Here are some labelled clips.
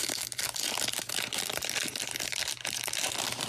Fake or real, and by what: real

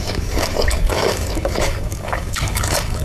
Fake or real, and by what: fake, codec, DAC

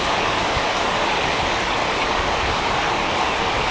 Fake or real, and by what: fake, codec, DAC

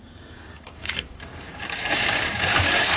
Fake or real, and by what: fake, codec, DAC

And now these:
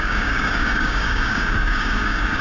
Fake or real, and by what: fake, codec, DAC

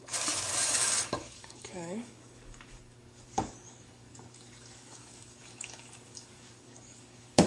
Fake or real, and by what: fake, codec, DAC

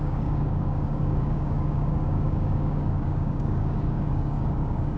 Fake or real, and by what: fake, codec, DAC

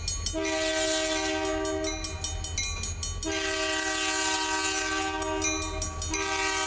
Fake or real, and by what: real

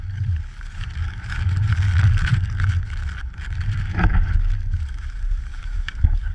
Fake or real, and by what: fake, codec, DAC